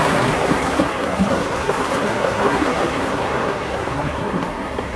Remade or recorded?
remade